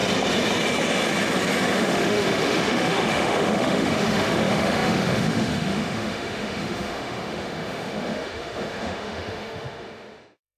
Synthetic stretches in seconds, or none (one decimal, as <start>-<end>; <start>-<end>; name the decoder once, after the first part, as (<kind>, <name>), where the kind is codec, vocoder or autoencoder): 1.7-10.6 (autoencoder, DAC-VAE)